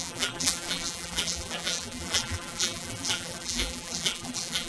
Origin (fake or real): fake